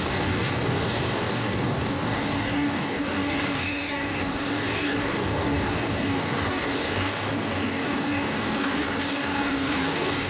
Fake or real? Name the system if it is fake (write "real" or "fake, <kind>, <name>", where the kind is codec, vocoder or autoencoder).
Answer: fake, codec, DAC